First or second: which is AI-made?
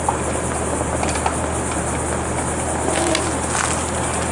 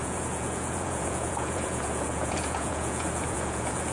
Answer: second